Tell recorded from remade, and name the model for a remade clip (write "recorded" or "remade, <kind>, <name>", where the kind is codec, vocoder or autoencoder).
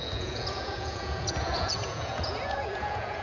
remade, vocoder, Vocos